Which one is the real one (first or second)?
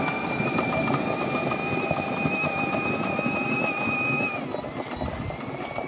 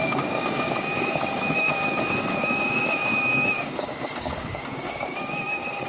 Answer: first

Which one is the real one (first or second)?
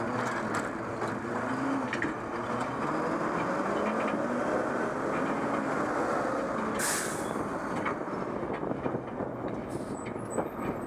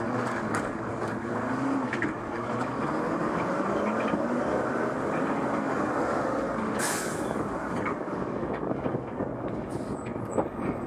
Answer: first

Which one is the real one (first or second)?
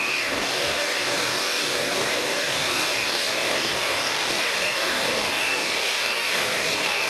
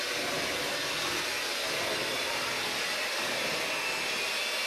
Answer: second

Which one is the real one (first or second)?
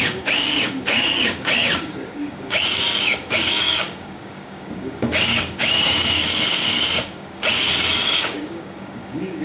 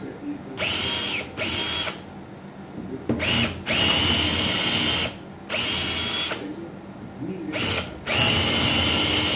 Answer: second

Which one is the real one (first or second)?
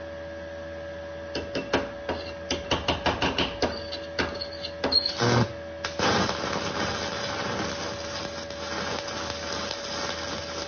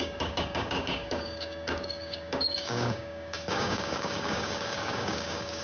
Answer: first